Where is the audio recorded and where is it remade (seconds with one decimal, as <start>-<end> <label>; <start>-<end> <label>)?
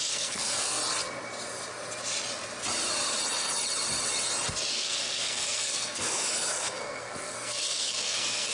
0.0-0.8 remade; 0.8-4.7 recorded; 4.7-8.5 remade